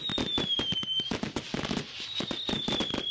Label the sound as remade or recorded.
recorded